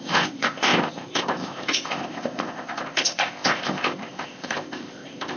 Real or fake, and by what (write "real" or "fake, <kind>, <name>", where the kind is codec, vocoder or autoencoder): fake, codec, ZipCodec